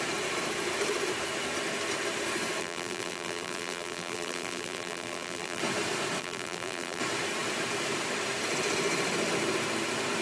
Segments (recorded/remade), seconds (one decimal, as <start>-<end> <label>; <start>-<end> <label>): 0.0-2.6 recorded; 2.6-5.6 remade; 5.6-6.2 recorded; 6.2-7.0 remade; 7.0-10.2 recorded